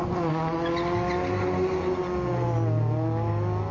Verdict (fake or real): real